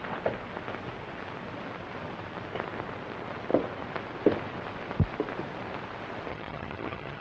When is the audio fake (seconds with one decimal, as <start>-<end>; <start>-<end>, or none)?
6.3-7.2